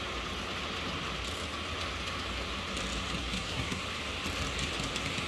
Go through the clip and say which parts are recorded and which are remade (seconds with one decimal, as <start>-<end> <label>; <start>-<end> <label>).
0.0-3.2 recorded; 3.2-3.8 remade; 3.8-5.3 recorded